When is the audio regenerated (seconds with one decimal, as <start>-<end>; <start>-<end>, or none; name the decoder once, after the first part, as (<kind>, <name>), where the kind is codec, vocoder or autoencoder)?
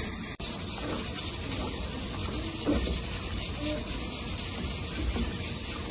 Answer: none